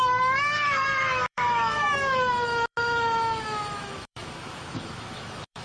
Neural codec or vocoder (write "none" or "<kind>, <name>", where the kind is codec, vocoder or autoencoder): autoencoder, DAC-VAE